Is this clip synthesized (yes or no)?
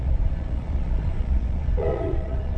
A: yes